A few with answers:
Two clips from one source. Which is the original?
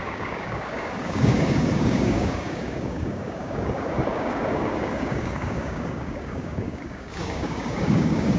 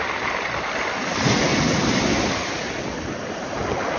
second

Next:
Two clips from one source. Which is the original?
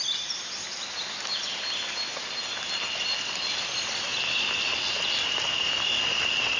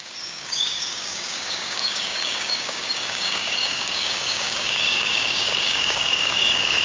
first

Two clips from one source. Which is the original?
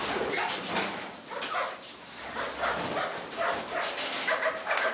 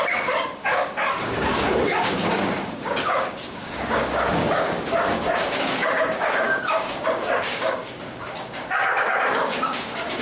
first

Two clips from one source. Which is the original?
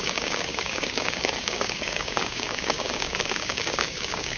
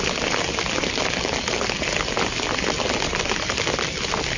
second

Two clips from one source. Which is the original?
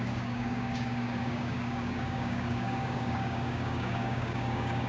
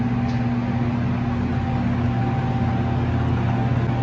second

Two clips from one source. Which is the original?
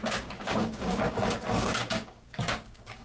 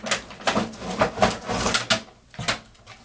second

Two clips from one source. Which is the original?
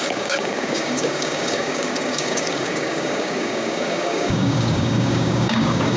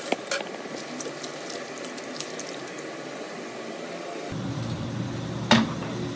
second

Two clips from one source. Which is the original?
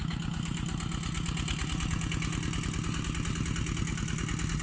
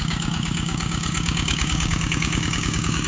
first